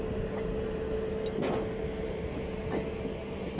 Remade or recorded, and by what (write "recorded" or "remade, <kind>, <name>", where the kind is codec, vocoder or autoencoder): recorded